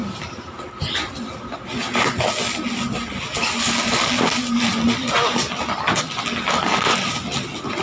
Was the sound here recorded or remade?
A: recorded